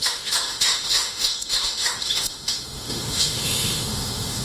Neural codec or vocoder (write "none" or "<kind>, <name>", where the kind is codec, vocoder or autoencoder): autoencoder, DAC-VAE